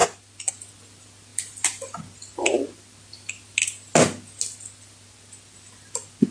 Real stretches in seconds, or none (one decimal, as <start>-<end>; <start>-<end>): 0.0-6.3